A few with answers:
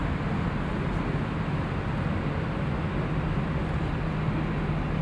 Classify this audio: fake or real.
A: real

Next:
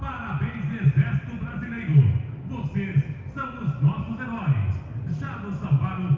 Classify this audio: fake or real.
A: real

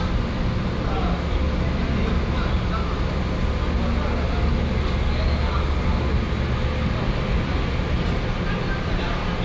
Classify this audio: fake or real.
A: real